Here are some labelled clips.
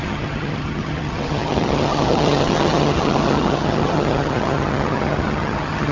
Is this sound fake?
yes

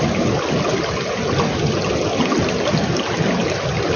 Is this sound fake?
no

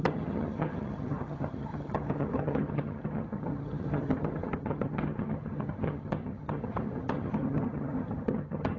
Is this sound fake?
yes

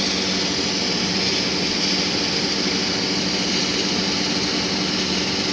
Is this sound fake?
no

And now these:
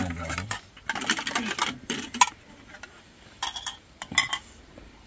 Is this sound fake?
no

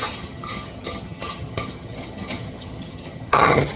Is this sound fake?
yes